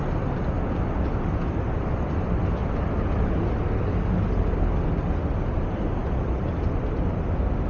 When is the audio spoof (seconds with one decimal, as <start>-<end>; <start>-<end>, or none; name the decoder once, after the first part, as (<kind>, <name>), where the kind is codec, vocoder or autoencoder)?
none

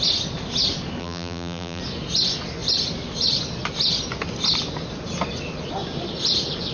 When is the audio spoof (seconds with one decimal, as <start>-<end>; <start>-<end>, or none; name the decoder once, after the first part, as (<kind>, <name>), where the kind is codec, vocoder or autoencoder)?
1.0-1.8 (vocoder, BigVGAN v2)

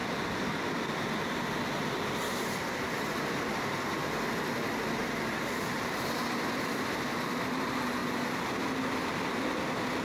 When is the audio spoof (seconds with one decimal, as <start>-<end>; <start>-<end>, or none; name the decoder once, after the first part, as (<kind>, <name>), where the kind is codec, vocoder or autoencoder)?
0.0-2.3 (vocoder, BigVGAN v2); 3.2-4.5; 5.0-8.0

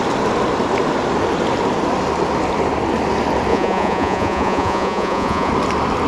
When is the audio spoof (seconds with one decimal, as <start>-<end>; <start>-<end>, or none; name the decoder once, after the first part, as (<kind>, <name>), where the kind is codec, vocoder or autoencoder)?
3.5-5.5 (vocoder, Vocos)

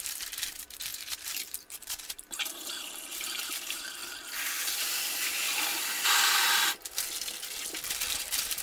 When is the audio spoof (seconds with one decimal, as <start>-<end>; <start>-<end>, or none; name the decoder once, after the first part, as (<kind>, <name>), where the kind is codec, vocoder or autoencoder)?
0.0-4.0 (vocoder, BigVGAN v2); 8.1-8.6